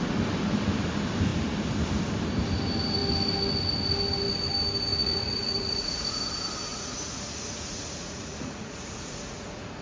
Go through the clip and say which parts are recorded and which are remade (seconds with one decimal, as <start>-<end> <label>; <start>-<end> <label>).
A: 0.0-4.9 recorded; 4.9-6.2 remade; 6.2-6.7 recorded; 6.7-9.8 remade